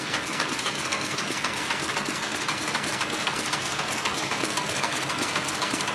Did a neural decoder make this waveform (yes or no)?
yes